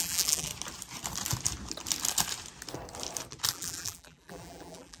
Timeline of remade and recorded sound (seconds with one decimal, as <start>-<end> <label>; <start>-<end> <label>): 0.0-0.5 remade; 0.5-3.5 recorded; 3.5-5.0 remade